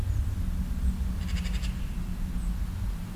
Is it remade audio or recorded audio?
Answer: recorded